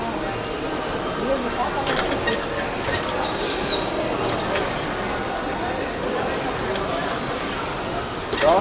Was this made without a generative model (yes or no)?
yes